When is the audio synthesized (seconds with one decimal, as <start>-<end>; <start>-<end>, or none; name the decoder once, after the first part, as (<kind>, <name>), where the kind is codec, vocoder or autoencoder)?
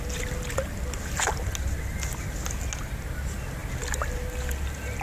none